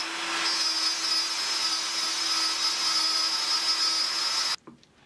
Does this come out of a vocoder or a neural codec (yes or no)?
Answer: no